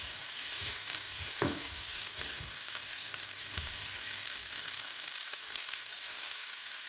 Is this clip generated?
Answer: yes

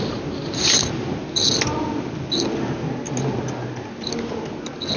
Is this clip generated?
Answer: no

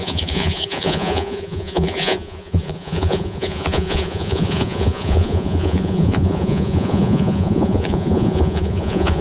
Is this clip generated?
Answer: yes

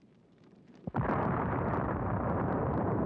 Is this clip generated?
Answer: yes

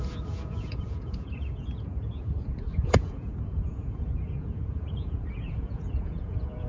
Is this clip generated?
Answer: yes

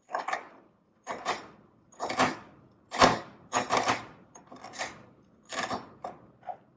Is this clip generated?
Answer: no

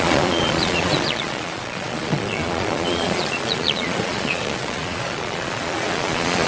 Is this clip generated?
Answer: yes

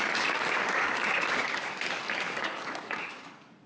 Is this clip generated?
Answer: yes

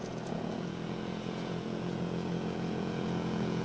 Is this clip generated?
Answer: yes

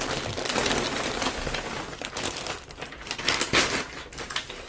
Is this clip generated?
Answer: no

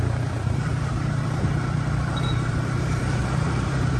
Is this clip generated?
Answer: yes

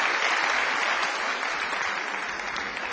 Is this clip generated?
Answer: no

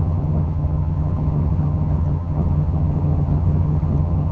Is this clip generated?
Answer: yes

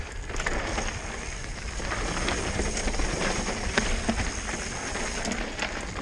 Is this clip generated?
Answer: no